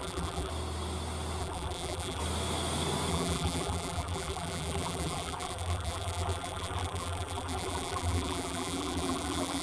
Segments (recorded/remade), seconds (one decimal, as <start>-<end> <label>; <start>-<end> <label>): 0.0-0.5 remade; 0.5-1.4 recorded; 1.4-2.2 remade; 2.2-3.1 recorded; 3.1-9.6 remade